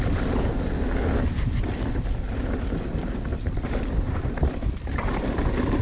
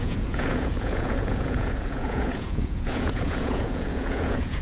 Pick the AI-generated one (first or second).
second